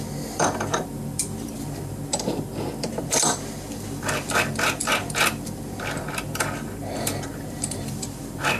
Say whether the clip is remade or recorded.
remade